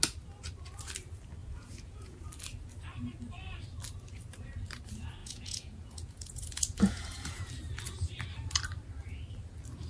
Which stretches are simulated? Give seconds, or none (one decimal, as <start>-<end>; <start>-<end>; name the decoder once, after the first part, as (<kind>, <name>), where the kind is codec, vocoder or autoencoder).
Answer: 1.4-2.2 (vocoder, Vocos); 5.2-7.5